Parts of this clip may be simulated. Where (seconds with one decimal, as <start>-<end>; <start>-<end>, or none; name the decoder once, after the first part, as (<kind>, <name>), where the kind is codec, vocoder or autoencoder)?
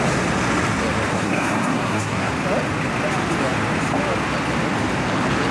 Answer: 1.1-2.3 (codec, SNAC)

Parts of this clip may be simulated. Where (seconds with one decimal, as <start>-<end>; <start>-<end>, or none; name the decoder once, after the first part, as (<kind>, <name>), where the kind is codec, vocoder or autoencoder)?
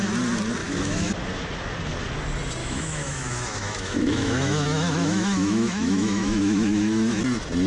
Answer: 0.6-1.1 (autoencoder, DAC-VAE); 2.6-7.2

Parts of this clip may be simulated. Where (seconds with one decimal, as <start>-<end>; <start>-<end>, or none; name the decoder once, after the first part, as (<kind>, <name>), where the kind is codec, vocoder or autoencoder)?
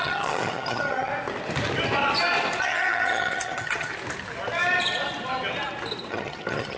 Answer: 0.0-1.1 (vocoder, HiFi-GAN); 2.6-3.9; 6.1-6.8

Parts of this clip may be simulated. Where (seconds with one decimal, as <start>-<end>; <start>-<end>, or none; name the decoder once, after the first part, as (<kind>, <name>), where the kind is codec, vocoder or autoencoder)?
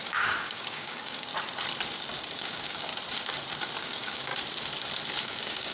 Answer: 0.0-1.3 (codec, DAC); 2.3-2.9; 3.8-4.3; 5.2-5.7